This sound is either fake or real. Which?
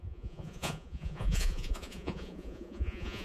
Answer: fake